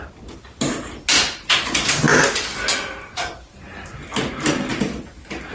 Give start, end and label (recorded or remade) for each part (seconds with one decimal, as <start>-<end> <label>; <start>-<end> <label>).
0.0-2.1 recorded; 2.1-3.3 remade; 3.3-4.7 recorded; 4.7-5.5 remade